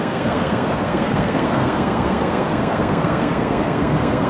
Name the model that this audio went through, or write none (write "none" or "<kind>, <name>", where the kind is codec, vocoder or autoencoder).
codec, SNAC